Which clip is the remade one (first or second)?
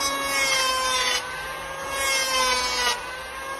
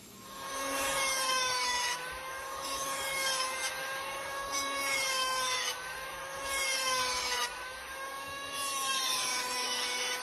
second